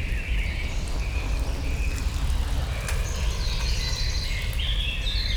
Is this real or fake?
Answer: real